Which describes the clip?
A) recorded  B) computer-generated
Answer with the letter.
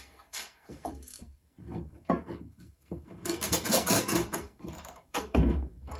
B